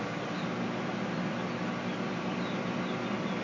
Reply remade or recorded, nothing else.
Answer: recorded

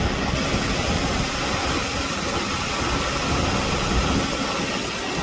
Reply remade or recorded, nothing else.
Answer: recorded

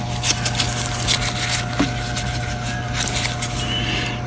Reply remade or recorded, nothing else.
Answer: recorded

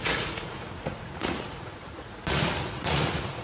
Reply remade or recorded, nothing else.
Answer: remade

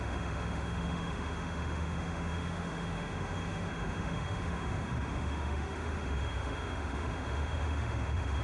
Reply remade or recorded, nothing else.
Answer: remade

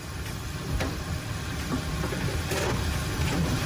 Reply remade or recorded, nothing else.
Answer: remade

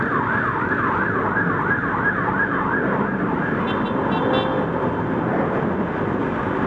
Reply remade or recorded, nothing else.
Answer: recorded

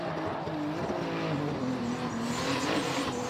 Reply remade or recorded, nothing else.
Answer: recorded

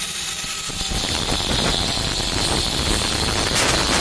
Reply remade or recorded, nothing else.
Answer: recorded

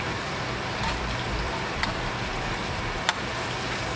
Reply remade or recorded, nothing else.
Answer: remade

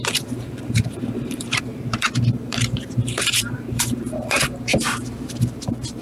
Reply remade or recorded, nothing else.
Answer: remade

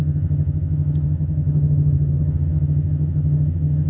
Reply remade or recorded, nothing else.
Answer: remade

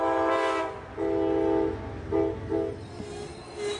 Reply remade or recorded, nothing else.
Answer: recorded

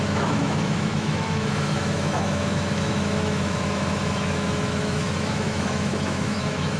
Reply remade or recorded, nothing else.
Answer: remade